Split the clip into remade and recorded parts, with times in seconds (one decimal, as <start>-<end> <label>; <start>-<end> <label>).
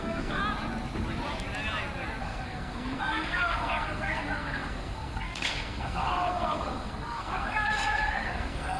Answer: 0.0-0.4 remade; 0.4-2.2 recorded; 2.2-8.8 remade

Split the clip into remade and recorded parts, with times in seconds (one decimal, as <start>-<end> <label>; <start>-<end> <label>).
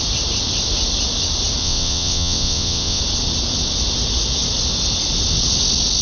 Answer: 0.0-1.6 recorded; 1.6-3.0 remade; 3.0-6.0 recorded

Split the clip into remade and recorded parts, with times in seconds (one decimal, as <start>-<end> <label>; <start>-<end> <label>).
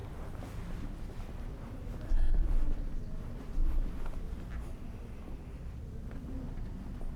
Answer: 0.0-7.2 recorded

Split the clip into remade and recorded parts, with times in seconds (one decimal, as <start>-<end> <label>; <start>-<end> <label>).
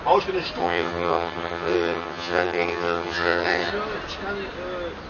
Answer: 0.0-0.6 recorded; 0.6-3.7 remade; 3.7-5.1 recorded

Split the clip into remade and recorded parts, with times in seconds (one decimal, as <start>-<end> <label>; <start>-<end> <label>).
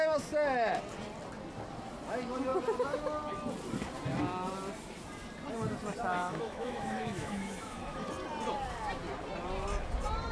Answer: 0.0-6.2 recorded; 6.2-8.1 remade; 8.1-10.3 recorded